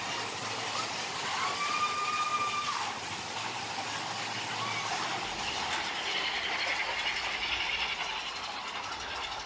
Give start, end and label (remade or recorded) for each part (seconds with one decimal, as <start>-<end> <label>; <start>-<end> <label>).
0.0-9.5 recorded